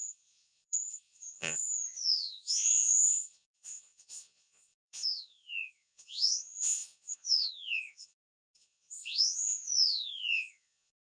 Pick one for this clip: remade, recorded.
remade